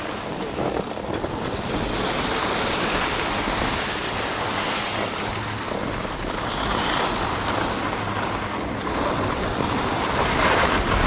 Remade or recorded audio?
recorded